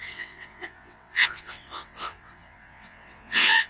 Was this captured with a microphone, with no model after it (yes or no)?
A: no